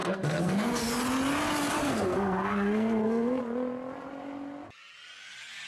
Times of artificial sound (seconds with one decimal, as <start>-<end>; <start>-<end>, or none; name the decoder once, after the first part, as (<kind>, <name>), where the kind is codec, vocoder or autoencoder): 0.0-0.9 (codec, SNAC); 1.8-3.4